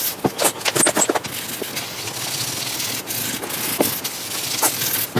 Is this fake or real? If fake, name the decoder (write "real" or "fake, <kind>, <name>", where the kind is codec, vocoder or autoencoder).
real